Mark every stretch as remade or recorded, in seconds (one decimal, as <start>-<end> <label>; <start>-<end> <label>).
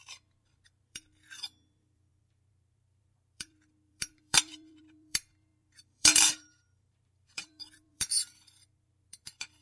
0.0-9.6 remade